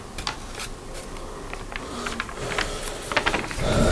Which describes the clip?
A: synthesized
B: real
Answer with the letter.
B